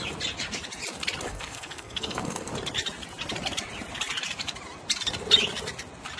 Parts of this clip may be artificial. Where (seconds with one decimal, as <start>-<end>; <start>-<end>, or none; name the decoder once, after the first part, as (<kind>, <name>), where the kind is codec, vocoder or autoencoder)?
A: 1.3-2.5 (codec, SNAC)